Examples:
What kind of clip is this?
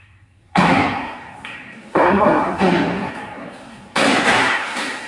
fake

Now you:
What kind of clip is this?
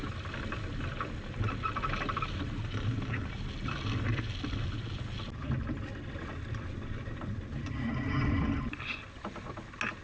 real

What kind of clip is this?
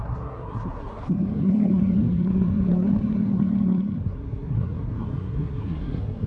fake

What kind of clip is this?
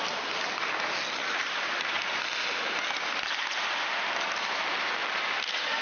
real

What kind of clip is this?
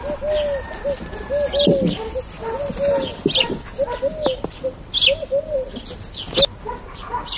real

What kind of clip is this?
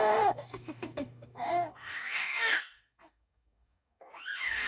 fake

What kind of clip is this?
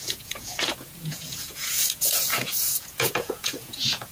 fake